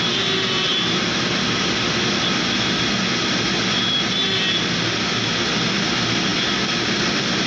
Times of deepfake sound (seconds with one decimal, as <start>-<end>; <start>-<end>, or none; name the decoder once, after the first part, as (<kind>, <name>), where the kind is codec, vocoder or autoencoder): none